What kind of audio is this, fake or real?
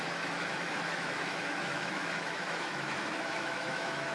fake